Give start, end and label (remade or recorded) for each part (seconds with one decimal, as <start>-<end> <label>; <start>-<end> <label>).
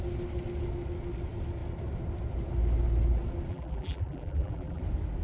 0.0-3.5 recorded; 3.5-4.8 remade; 4.8-5.2 recorded